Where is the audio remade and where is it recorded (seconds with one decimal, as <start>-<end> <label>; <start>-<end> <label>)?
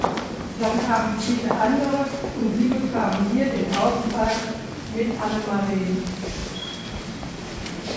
0.0-8.0 recorded